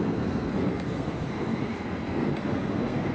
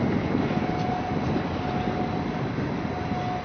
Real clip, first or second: second